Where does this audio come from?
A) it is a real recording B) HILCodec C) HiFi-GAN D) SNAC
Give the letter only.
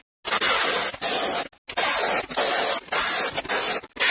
A